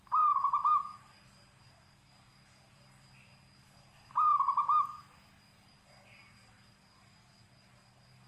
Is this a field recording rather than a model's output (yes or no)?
yes